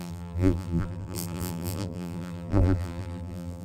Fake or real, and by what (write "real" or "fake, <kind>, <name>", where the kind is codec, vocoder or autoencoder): fake, vocoder, BigVGAN v2